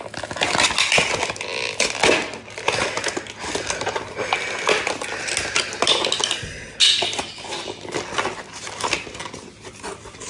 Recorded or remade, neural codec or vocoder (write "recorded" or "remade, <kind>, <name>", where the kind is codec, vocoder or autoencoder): recorded